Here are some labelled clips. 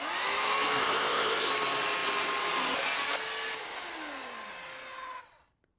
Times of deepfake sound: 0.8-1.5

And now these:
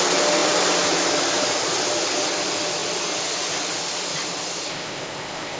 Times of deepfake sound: 4.7-5.6

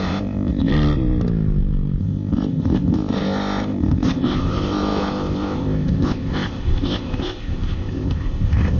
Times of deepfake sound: 0.0-0.7; 2.0-8.8

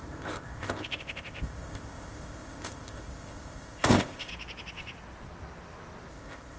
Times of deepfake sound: 0.0-4.3; 6.1-6.6

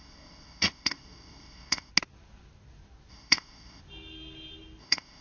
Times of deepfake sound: 0.0-1.9; 3.1-3.8; 4.8-5.2